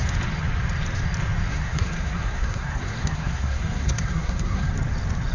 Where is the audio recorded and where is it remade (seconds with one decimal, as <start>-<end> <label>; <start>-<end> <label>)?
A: 0.0-1.5 recorded; 1.5-4.7 remade; 4.7-5.3 recorded